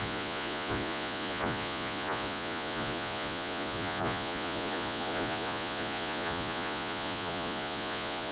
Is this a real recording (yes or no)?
no